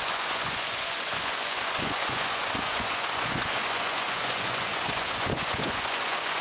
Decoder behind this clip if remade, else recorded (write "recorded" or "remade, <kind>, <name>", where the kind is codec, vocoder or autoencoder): remade, vocoder, Vocos